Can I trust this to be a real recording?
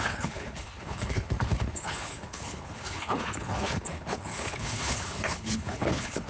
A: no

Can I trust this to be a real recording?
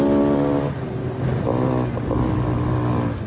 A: yes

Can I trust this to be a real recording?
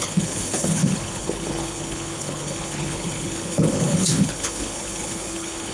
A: no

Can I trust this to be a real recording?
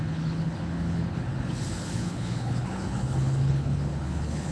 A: no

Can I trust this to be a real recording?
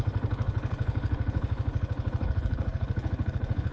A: no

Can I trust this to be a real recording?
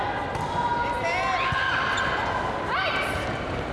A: yes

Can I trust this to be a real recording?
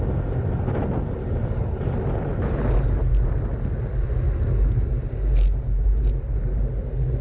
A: yes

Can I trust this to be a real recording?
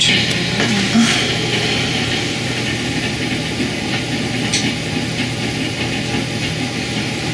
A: yes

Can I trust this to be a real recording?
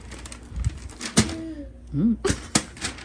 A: yes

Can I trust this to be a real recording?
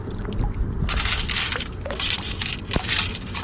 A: yes